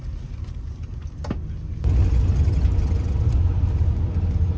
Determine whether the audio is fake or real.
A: real